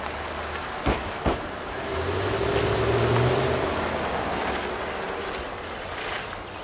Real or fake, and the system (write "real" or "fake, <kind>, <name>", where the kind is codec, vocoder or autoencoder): real